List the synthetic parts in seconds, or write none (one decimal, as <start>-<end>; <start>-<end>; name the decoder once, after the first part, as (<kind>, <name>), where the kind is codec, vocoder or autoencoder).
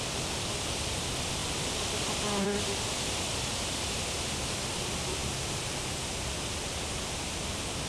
none